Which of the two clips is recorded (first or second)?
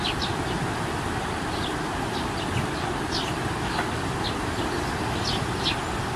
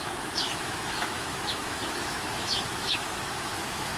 first